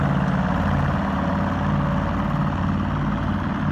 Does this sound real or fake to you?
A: real